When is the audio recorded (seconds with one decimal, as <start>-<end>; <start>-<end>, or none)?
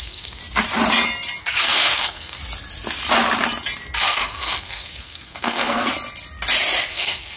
0.4-1.4; 2.4-4.0; 5.9-6.9